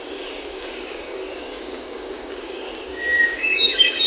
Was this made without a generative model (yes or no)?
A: no